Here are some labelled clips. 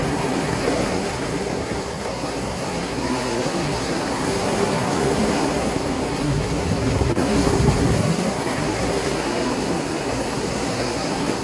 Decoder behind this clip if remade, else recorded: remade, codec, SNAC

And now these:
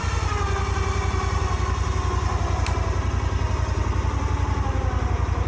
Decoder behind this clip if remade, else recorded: recorded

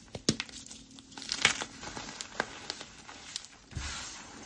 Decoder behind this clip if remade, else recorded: recorded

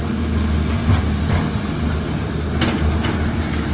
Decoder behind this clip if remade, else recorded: recorded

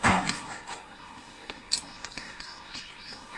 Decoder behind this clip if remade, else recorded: remade, codec, SNAC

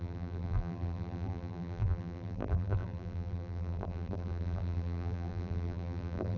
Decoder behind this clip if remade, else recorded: remade, vocoder, BigVGAN v2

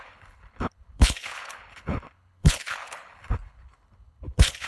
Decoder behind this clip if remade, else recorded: remade, codec, HILCodec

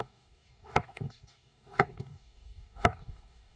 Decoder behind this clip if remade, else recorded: remade, codec, DAC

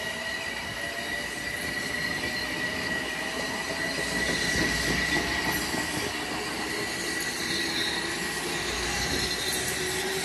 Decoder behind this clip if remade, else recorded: recorded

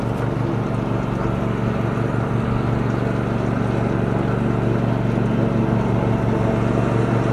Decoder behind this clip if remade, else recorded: recorded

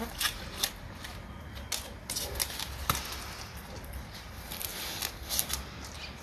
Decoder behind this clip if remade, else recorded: recorded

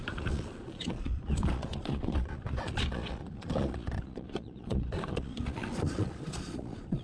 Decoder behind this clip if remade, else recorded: remade, vocoder, Vocos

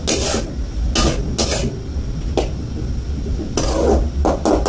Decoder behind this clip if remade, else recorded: recorded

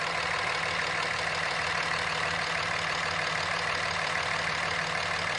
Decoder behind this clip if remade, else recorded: recorded